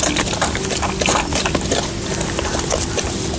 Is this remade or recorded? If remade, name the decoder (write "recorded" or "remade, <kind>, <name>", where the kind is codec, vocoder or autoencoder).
recorded